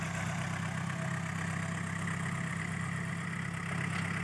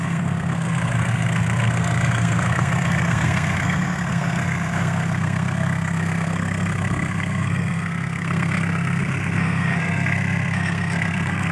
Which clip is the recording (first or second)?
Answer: first